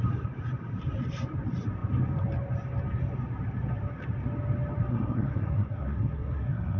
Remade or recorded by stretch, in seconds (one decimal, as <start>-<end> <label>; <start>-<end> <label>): 0.0-4.9 recorded; 4.9-6.8 remade